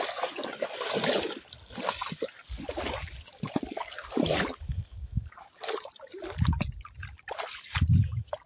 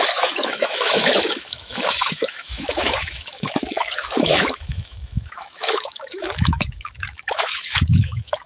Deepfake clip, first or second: second